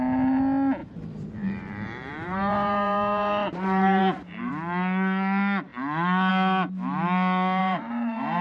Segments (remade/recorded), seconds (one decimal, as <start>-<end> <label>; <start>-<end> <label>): 0.0-0.8 recorded; 0.8-4.5 remade; 4.5-7.6 recorded; 7.6-8.4 remade